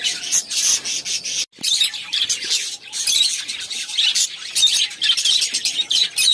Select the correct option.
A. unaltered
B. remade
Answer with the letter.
A